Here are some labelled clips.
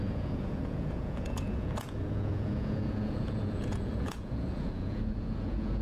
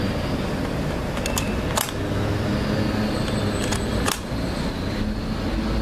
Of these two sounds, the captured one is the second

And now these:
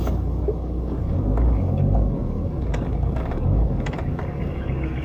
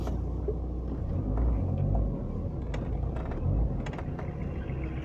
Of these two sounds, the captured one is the second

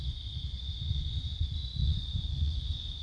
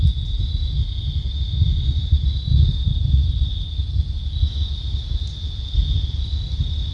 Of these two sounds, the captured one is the second